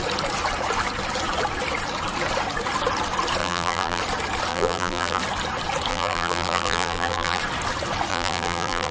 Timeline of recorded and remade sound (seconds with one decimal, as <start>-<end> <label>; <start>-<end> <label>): 0.0-3.4 recorded; 3.4-4.0 remade; 4.0-4.5 recorded; 4.5-5.2 remade; 5.2-5.9 recorded; 5.9-7.4 remade; 7.4-8.1 recorded; 8.1-8.9 remade